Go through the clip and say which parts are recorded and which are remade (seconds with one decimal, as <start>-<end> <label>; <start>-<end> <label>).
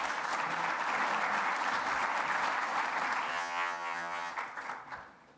0.0-3.3 recorded; 3.3-4.3 remade; 4.3-5.4 recorded